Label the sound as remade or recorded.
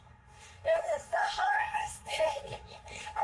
remade